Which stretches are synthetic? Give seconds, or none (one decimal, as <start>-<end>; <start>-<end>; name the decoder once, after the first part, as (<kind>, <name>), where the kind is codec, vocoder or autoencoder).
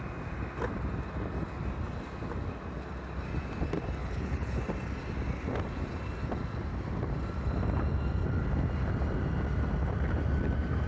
4.0-4.6 (codec, HILCodec)